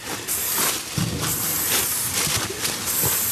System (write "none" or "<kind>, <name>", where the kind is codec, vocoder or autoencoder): none